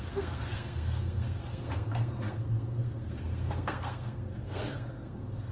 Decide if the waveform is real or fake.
fake